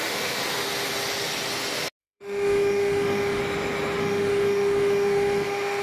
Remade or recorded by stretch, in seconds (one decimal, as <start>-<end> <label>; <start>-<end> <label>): 0.0-0.4 remade; 0.4-2.0 recorded; 2.0-3.4 remade; 3.4-4.0 recorded; 4.0-5.8 remade